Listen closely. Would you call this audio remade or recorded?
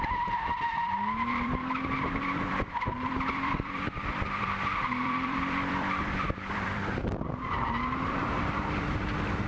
remade